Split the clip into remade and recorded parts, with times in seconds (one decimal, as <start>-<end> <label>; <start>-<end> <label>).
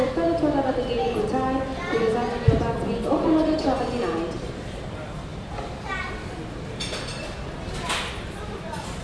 0.0-9.0 recorded